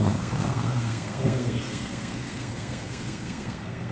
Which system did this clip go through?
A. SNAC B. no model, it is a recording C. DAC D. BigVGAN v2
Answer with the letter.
A